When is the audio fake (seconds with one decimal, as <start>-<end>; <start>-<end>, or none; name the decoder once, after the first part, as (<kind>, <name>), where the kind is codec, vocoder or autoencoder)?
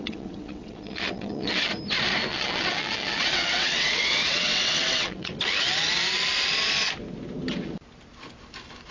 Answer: 0.0-1.7 (vocoder, WaveNeXt); 2.3-5.3